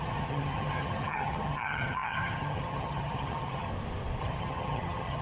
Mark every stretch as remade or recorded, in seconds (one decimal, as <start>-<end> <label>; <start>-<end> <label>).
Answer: 0.0-3.7 remade; 3.7-4.2 recorded; 4.2-5.2 remade